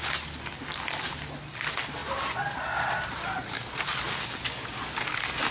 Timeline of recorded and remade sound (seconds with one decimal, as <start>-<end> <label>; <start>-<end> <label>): 0.0-5.5 recorded